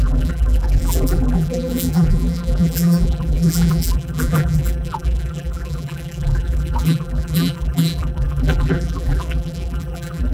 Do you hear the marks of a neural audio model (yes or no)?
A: yes